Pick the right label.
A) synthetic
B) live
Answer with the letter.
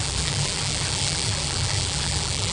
A